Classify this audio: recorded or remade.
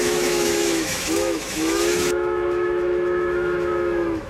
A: remade